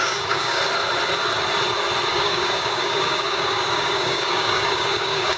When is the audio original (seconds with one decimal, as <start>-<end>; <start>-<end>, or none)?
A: 0.6-2.1